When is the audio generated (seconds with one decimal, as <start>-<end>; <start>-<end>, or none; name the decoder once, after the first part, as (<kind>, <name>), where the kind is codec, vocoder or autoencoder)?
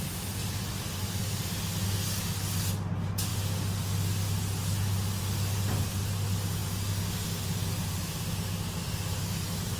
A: 0.4-1.0 (vocoder, BigVGAN v2)